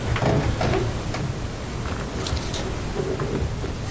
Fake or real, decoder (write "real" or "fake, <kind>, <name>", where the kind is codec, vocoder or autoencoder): real